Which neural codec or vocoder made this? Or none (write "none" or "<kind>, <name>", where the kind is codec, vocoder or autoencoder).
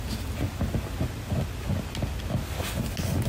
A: none